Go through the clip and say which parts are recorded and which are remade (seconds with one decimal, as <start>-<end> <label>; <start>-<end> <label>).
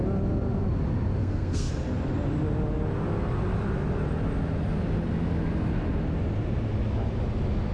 0.0-1.2 recorded; 1.2-1.7 remade; 1.7-7.7 recorded